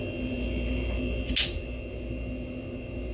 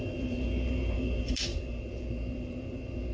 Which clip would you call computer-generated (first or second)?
second